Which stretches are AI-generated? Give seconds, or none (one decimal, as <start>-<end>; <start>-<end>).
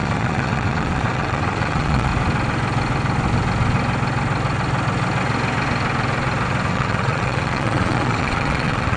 0.0-2.1; 6.7-9.0